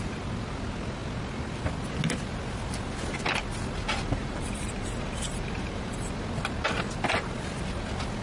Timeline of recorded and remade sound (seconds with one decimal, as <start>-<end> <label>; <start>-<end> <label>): 0.0-4.2 recorded; 4.2-5.9 remade; 5.9-8.2 recorded